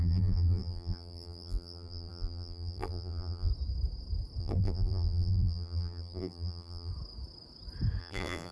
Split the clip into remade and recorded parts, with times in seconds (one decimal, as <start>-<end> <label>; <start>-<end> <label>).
0.0-3.5 remade; 3.5-4.4 recorded; 4.4-6.9 remade; 6.9-8.0 recorded; 8.0-8.5 remade